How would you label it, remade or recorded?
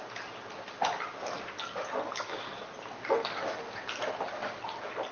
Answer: recorded